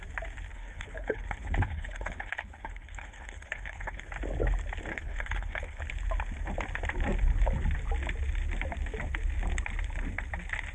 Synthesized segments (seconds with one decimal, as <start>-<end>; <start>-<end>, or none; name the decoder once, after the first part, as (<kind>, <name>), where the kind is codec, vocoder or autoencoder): 0.5-4.0 (codec, HILCodec); 4.9-5.8